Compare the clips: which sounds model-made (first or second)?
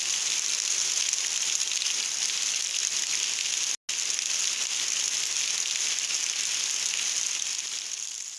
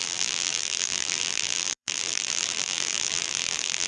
second